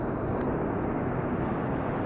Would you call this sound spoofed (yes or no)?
no